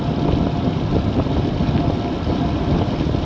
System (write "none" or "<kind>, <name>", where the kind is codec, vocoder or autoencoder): none